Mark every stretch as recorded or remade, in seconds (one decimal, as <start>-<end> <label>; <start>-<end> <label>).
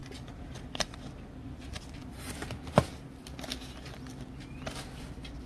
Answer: 0.0-1.6 remade; 1.6-2.0 recorded; 2.0-4.8 remade; 4.8-5.5 recorded